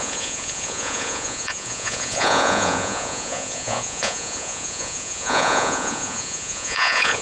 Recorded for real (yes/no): no